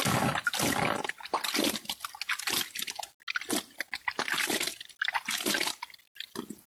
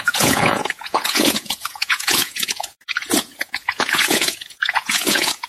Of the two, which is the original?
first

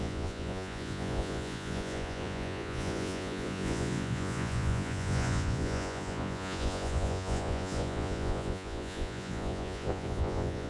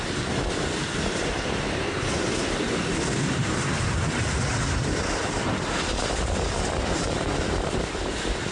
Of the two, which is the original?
second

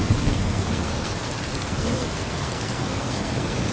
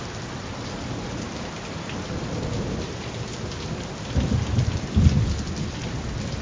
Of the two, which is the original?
second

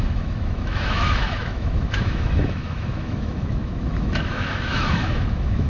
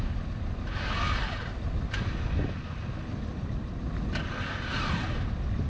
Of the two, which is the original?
second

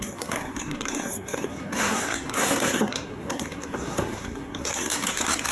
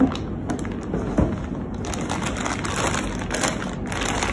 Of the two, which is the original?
second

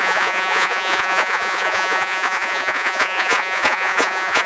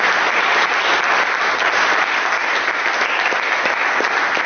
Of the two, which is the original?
second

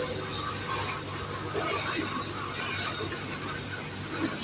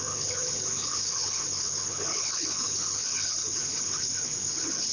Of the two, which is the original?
first